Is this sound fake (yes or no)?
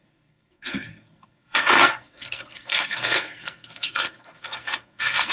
yes